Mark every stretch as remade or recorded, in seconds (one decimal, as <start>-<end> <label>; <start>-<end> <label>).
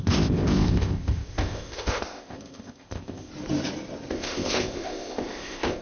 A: 0.0-3.3 remade; 3.3-4.1 recorded; 4.1-5.8 remade